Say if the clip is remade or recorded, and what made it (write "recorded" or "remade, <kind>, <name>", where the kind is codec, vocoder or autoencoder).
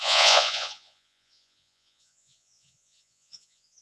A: remade, vocoder, Vocos